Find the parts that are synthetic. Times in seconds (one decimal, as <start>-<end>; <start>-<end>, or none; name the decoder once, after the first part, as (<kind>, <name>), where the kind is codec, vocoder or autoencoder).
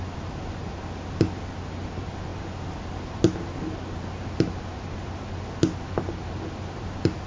none